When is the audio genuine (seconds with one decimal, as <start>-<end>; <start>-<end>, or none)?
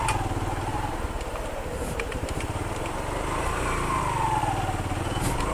0.0-0.7; 4.0-5.5